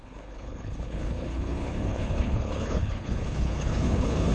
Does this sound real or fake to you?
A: fake